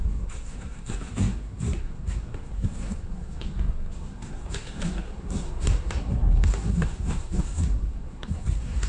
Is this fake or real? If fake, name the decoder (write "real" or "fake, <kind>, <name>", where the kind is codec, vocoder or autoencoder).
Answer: fake, codec, SNAC